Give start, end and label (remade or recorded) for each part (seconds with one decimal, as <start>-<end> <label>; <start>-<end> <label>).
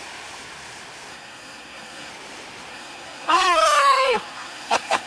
0.0-1.1 recorded; 1.1-2.1 remade; 2.1-2.7 recorded; 2.7-5.1 remade